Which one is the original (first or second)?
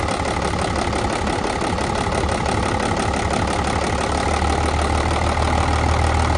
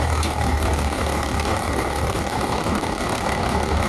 first